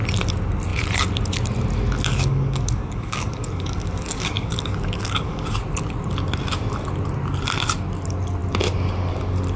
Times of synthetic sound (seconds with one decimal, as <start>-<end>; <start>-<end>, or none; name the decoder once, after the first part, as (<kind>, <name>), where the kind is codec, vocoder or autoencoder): 2.1-5.6 (codec, DAC)